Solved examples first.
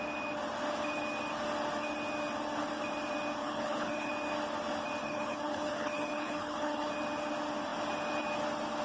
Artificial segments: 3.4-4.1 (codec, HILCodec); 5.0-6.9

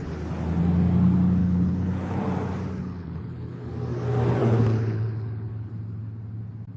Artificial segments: 1.4-2.2 (codec, HILCodec); 2.8-3.7; 4.4-5.7

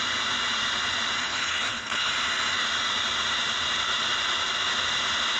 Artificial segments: 1.2-2.1 (codec, HILCodec)

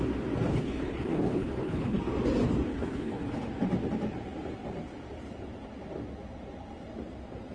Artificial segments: 0.5-2.0 (codec, HILCodec); 2.7-3.4

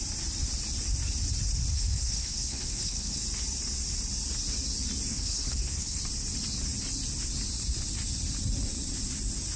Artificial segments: 1.7-3.2 (codec, HILCodec); 5.1-6.0

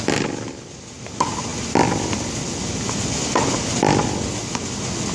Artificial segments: none

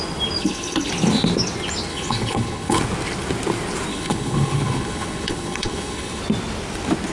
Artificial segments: 0.4-0.9 (codec, HILCodec); 1.9-2.8; 3.9-6.2

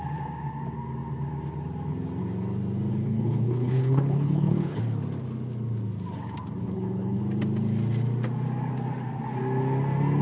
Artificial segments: 2.9-4.8 (codec, HILCodec); 6.6-7.2